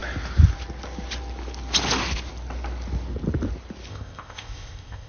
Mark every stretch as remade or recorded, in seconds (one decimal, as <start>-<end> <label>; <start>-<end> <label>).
0.0-3.9 recorded; 3.9-5.1 remade